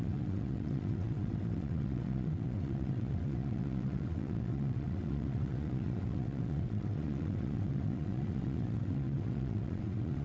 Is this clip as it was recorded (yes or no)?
no